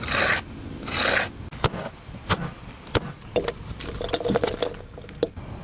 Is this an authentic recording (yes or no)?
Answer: yes